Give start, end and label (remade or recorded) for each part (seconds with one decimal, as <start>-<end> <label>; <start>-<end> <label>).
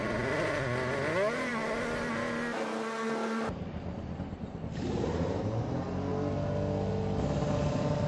0.0-8.1 recorded